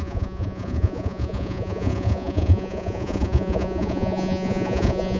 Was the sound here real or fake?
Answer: fake